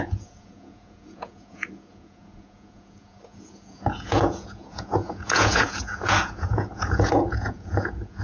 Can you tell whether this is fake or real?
fake